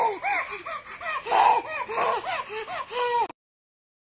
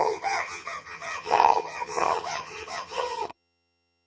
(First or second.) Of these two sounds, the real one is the first